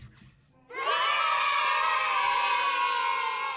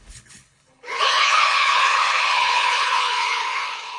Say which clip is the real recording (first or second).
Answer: first